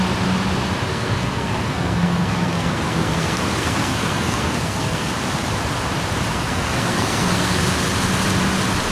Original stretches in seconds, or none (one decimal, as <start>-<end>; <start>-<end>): 0.0-0.9; 5.1-6.3; 7.6-8.9